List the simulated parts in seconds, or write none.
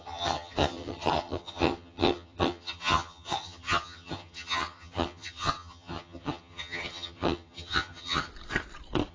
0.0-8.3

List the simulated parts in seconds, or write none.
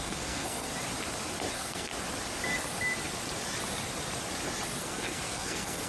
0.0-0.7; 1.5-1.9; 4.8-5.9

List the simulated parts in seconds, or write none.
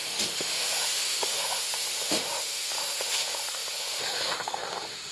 0.0-5.1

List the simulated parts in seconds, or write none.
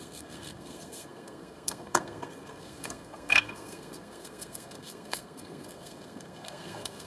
0.0-7.1